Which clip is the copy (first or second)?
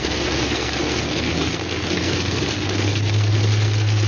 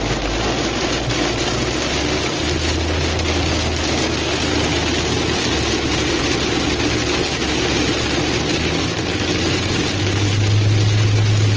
first